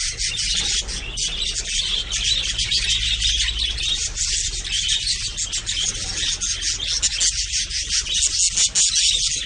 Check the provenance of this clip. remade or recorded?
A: recorded